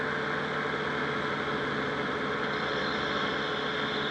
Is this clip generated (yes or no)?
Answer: no